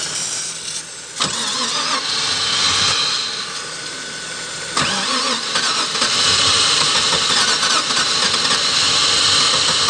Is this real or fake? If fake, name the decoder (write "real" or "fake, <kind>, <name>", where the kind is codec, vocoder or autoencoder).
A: real